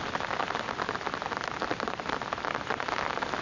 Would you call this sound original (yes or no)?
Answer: yes